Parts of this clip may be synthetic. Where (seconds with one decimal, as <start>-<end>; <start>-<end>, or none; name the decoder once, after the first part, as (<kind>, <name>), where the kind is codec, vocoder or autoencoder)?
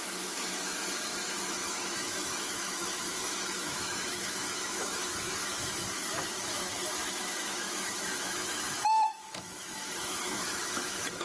0.0-11.2 (autoencoder, DAC-VAE)